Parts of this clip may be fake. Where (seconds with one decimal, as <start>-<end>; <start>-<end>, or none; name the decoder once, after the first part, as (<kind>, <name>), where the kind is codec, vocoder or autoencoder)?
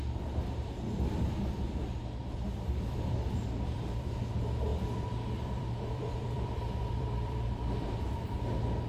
2.2-4.2 (vocoder, BigVGAN v2); 4.7-7.8